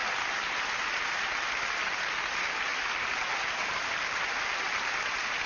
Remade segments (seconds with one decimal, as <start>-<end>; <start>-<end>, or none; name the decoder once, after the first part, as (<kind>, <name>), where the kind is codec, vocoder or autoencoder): none